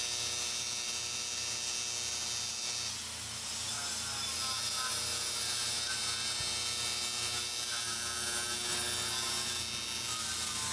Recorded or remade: recorded